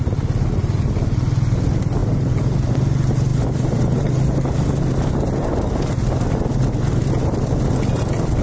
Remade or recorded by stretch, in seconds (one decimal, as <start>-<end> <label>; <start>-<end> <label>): 0.0-8.4 recorded